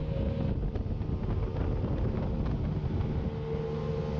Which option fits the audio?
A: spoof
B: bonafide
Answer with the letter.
B